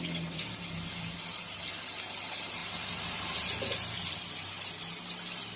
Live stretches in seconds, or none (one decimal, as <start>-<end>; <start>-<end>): 0.0-5.6